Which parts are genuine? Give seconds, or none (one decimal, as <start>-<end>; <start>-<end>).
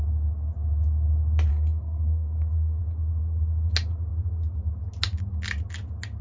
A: 0.0-1.5; 2.8-6.2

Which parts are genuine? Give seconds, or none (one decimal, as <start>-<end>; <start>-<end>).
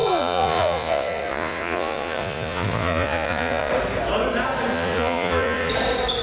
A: 3.7-4.7; 5.7-6.2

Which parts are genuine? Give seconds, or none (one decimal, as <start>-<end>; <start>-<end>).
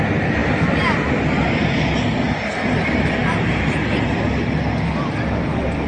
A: 0.0-0.4; 1.1-3.2; 4.2-5.9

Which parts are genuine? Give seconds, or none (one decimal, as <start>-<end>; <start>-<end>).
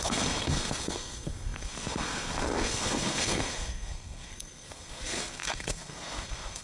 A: none